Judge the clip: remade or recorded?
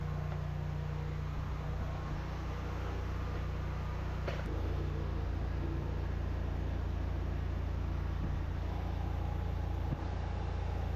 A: recorded